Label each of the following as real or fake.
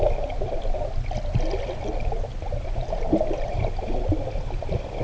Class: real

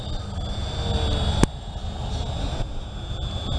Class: real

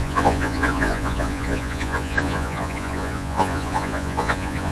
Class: fake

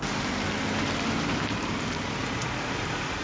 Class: real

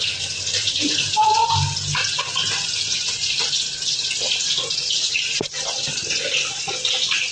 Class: real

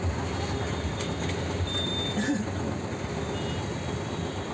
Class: real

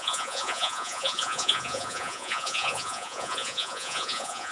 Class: fake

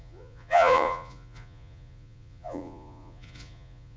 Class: fake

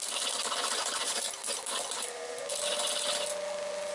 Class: real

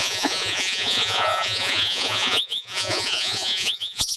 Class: fake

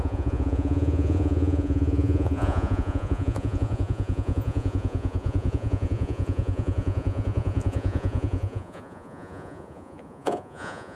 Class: fake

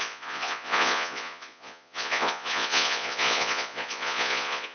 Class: fake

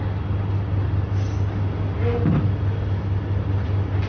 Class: real